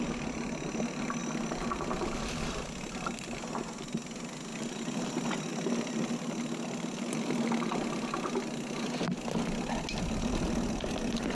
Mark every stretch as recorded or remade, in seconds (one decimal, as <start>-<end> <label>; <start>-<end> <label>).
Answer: 0.0-11.3 recorded